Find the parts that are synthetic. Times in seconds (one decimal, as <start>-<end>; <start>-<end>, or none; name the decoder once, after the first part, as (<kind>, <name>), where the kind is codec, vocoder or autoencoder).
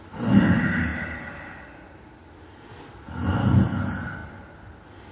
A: none